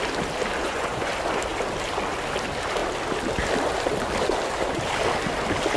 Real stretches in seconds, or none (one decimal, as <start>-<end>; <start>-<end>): 0.0-0.6; 1.1-5.8